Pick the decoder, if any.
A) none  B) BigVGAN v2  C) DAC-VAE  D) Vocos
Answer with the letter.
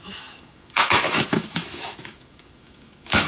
C